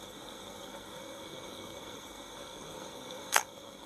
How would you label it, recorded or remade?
remade